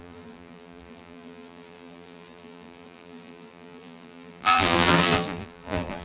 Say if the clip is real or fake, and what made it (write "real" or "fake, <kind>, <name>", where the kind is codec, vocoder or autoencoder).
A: fake, vocoder, BigVGAN v2